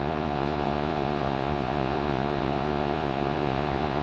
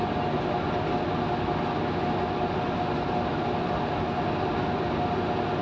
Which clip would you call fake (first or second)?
first